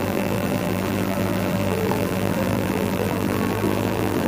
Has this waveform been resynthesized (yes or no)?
yes